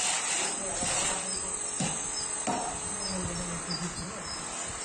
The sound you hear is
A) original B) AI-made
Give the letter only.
A